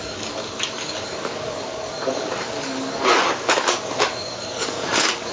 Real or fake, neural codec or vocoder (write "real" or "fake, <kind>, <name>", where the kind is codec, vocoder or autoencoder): fake, codec, DAC